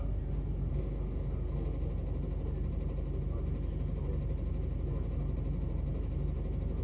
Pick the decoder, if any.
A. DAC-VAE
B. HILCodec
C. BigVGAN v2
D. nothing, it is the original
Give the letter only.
D